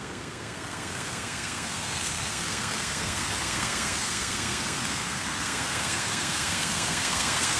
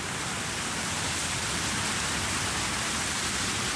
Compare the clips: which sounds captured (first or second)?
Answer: second